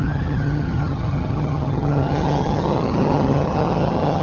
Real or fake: fake